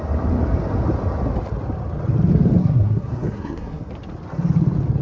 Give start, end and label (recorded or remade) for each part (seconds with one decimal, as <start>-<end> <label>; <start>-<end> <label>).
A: 0.0-2.6 recorded; 2.6-3.9 remade; 3.9-5.0 recorded